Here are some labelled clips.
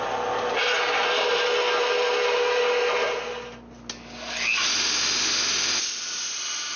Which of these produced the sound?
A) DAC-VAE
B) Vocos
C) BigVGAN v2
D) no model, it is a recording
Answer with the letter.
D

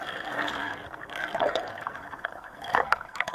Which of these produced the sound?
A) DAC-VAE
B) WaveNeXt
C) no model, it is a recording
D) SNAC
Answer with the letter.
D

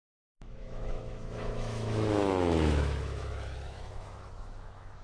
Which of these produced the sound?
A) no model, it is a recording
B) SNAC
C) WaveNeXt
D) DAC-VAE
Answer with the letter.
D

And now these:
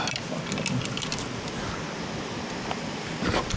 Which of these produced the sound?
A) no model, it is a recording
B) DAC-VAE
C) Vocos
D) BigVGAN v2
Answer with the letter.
A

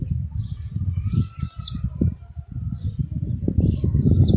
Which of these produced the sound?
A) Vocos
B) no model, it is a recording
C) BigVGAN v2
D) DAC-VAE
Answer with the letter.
C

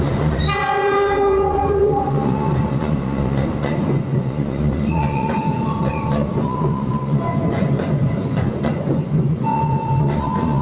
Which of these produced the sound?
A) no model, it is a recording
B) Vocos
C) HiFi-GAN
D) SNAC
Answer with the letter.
B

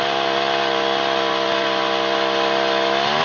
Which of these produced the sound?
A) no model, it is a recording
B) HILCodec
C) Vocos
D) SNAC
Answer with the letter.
A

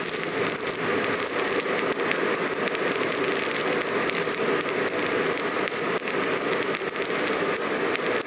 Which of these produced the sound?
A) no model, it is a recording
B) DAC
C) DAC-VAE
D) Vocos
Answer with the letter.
A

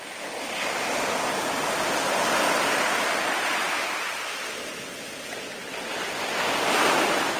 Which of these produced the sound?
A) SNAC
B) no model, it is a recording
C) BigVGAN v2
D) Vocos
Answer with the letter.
B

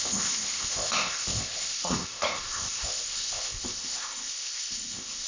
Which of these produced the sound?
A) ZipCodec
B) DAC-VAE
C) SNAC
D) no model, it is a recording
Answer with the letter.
A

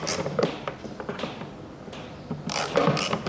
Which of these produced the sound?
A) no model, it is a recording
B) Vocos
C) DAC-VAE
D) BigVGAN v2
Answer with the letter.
D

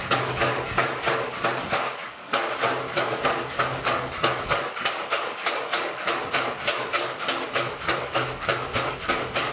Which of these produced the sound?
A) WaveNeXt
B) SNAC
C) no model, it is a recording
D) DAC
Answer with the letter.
D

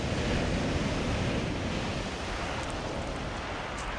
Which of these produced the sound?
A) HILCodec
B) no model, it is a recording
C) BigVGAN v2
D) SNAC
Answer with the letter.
B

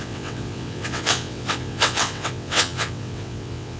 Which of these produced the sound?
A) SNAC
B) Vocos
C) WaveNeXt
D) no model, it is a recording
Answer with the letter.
C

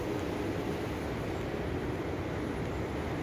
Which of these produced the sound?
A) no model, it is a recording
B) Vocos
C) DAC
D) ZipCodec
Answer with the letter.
A